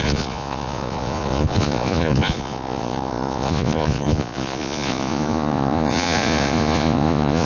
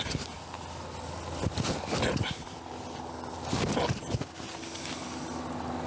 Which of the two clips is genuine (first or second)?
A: second